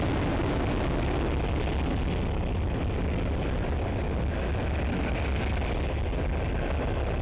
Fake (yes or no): no